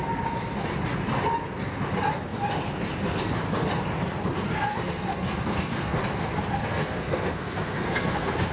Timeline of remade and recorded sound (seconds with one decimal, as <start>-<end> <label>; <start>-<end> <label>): 0.0-4.7 recorded; 4.7-6.0 remade; 6.0-6.6 recorded; 6.6-8.5 remade